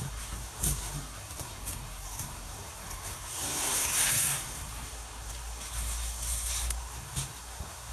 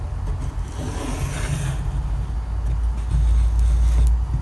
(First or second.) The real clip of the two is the second